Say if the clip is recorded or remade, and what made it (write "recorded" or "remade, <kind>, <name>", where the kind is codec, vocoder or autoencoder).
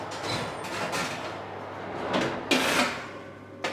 recorded